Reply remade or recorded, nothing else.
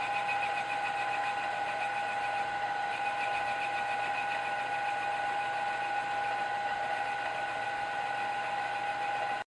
recorded